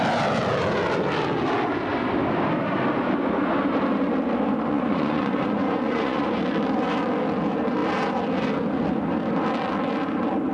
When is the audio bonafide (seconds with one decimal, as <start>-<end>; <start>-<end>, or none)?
0.0-4.7; 6.4-10.5